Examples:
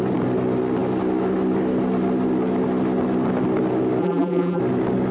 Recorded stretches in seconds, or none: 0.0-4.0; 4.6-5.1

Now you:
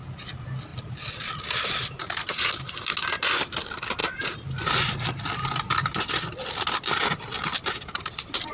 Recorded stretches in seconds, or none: 0.0-8.5

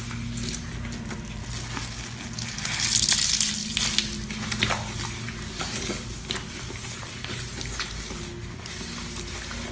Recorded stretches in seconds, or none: 0.0-9.7

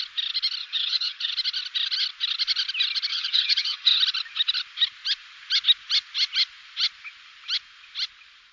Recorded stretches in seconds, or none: 0.0-0.6; 1.3-3.1; 4.0-8.5

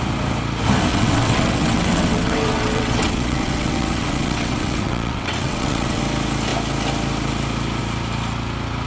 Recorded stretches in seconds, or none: 0.0-0.9; 6.0-8.9

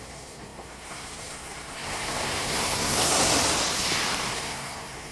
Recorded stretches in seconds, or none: 3.3-4.3